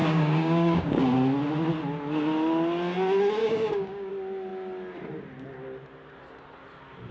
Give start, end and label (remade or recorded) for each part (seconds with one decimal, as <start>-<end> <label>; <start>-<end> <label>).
0.0-1.0 remade; 1.0-3.4 recorded; 3.4-4.1 remade; 4.1-7.1 recorded